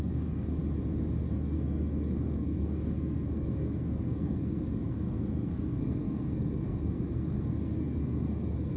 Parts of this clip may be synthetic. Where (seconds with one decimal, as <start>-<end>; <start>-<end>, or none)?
0.0-0.6; 1.3-8.8